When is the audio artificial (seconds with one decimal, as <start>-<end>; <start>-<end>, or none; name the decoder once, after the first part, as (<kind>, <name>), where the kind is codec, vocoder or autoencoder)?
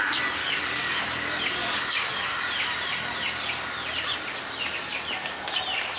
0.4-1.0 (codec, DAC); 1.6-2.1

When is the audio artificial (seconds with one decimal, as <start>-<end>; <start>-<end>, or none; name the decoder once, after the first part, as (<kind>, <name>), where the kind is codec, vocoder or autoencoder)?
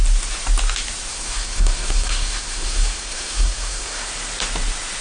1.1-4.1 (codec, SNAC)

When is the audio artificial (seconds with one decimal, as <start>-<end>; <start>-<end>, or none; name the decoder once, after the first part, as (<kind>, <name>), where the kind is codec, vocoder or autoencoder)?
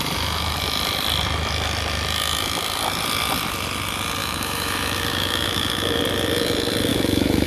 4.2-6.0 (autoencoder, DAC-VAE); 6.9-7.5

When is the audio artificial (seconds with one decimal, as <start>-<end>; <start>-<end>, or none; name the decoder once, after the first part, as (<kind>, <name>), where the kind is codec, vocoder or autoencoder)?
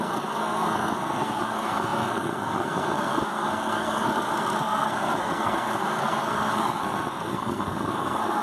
0.0-8.4 (codec, SNAC)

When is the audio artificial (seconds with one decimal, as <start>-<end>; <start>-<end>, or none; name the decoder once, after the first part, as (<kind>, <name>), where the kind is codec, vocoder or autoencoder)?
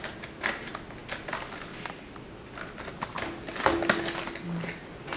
none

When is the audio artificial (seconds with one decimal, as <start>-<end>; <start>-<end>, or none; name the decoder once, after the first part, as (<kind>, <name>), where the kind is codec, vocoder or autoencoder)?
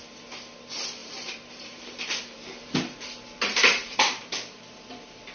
1.0-4.2 (vocoder, BigVGAN v2)